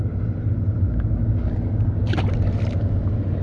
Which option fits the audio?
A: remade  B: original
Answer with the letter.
B